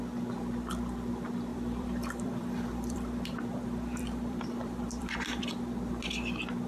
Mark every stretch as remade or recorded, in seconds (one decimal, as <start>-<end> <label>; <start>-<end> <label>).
0.0-1.5 recorded; 1.5-5.5 remade; 5.5-6.7 recorded